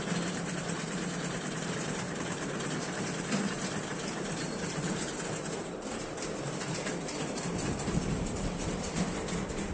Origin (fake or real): fake